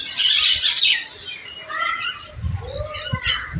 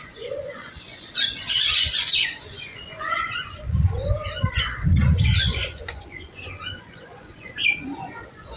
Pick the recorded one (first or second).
first